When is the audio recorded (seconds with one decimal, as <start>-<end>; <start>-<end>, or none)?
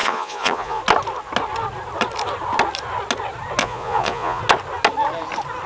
0.8-3.6; 4.4-5.7